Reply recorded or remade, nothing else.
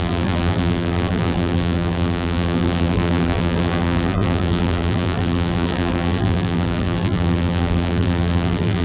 remade